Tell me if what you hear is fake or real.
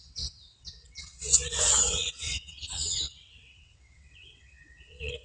fake